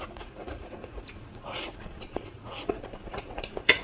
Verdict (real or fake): fake